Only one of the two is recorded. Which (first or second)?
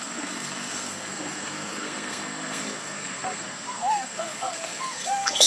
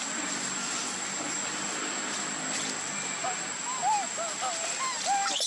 second